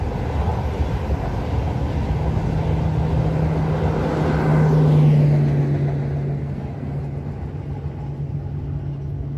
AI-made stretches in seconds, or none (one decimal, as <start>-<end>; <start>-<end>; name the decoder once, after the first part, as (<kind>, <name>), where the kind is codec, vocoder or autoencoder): 6.4-7.0 (codec, SNAC)